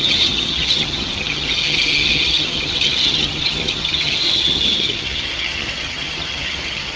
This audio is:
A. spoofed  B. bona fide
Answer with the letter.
A